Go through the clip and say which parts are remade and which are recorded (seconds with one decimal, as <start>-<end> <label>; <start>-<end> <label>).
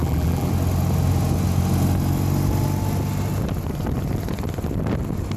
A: 0.0-0.5 remade; 0.5-5.4 recorded